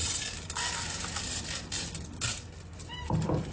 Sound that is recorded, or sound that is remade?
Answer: recorded